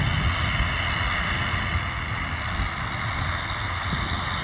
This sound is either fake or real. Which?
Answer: real